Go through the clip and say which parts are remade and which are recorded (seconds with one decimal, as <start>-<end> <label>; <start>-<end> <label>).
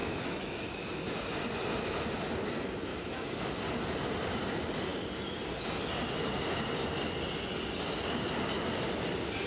0.0-1.0 remade; 1.0-2.9 recorded; 2.9-3.6 remade; 3.6-9.5 recorded